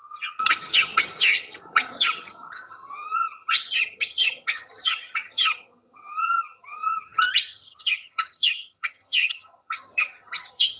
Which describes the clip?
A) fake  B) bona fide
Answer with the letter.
A